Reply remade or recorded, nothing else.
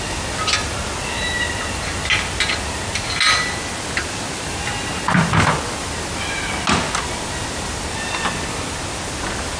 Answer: recorded